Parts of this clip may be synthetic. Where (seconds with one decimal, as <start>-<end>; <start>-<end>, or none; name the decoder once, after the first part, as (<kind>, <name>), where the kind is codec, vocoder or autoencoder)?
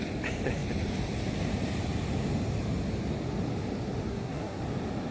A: 4.1-4.6 (codec, SNAC)